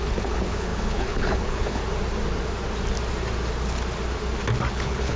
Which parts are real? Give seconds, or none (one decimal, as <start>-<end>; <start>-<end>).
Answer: 1.8-4.7